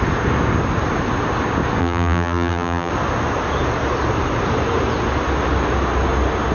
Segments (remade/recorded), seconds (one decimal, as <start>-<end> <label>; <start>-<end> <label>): 0.0-1.8 recorded; 1.8-2.9 remade; 2.9-6.5 recorded